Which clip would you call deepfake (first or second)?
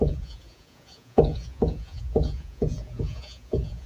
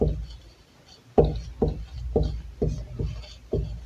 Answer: first